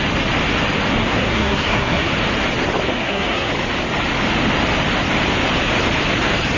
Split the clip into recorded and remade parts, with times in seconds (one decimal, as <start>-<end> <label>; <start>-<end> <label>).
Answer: 0.0-1.0 recorded; 1.0-2.1 remade; 2.1-2.9 recorded; 2.9-3.5 remade; 3.5-6.6 recorded